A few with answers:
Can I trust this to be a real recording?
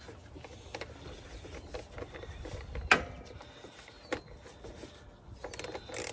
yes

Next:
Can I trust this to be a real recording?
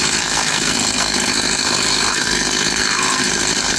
no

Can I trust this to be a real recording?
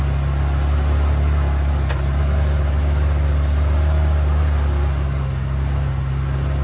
yes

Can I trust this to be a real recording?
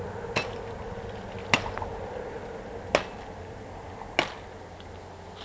yes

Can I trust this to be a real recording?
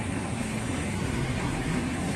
no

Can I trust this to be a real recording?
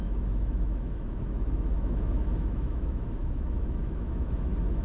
no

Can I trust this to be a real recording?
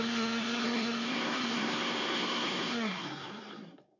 no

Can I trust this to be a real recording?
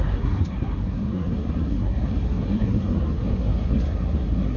no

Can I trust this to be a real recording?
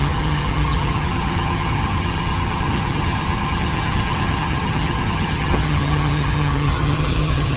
no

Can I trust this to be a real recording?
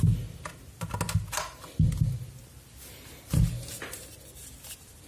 yes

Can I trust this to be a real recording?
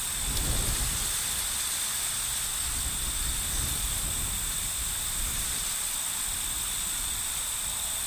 yes